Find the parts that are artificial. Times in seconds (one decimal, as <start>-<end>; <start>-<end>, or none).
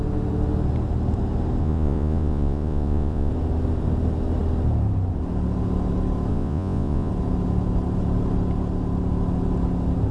1.6-3.3; 6.3-7.1